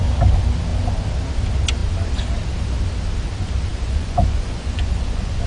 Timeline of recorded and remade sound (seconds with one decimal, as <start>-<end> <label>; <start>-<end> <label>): 0.0-3.7 recorded; 3.7-5.5 remade